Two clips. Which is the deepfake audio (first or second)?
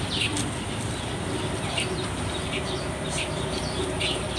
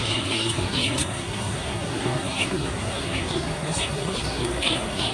second